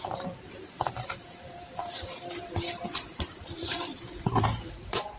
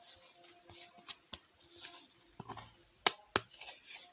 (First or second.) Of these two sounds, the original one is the second